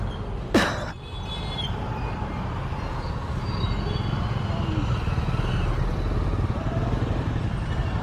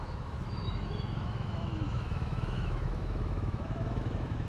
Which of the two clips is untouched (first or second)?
first